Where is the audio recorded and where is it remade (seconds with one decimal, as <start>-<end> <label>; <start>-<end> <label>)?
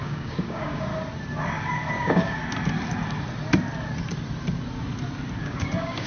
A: 0.0-0.9 remade; 0.9-1.9 recorded; 1.9-2.4 remade; 2.4-5.4 recorded; 5.4-6.1 remade